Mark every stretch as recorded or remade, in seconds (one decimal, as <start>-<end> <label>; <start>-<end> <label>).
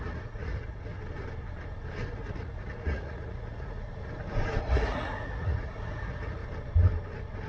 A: 0.0-0.9 remade; 0.9-2.1 recorded; 2.1-3.9 remade; 3.9-4.6 recorded; 4.6-6.4 remade; 6.4-7.5 recorded